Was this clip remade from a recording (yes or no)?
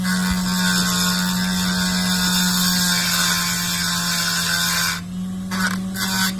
no